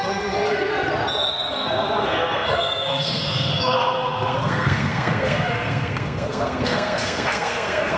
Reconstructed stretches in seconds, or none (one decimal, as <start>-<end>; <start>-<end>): 0.0-0.7; 1.3-8.0